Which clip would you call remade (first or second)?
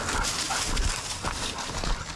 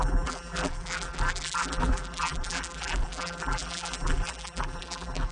second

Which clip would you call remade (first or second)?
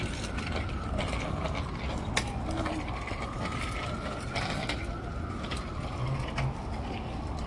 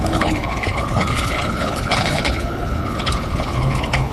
second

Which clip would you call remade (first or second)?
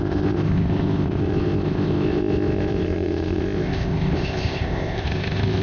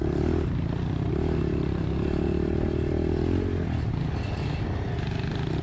first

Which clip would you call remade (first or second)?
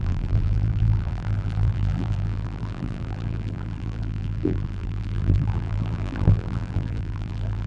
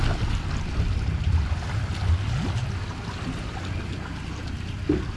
first